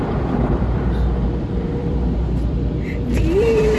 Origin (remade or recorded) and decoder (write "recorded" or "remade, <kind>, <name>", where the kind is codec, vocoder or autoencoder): remade, vocoder, BigVGAN v2